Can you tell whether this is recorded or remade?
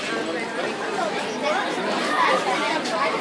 recorded